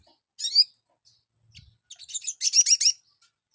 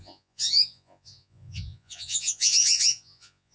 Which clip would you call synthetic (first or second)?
second